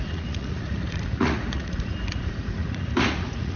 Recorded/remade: remade